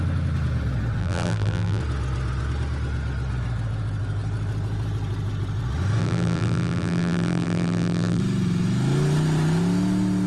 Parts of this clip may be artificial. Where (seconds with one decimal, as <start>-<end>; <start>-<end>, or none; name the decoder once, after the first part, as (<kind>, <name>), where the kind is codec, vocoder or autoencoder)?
1.0-1.8 (vocoder, BigVGAN v2); 6.0-8.2